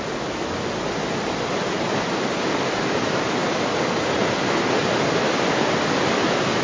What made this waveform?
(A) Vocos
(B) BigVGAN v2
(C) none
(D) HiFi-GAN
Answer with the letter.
C